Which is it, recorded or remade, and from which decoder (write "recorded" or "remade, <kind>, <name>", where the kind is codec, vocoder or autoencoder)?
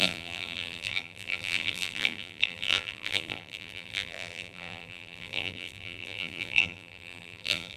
remade, vocoder, BigVGAN v2